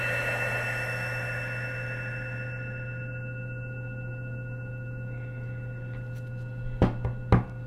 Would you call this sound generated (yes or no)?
no